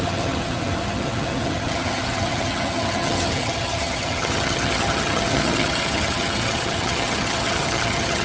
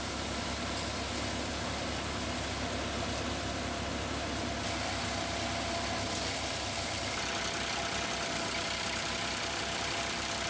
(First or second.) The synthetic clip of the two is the first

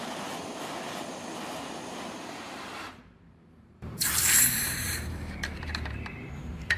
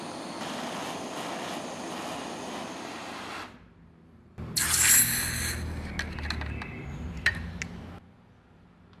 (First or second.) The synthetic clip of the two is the first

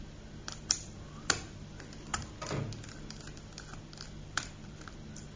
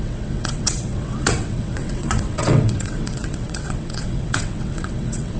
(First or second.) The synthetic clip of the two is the second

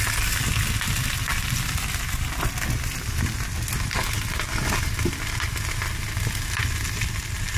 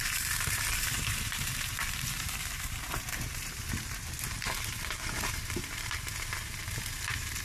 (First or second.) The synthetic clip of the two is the second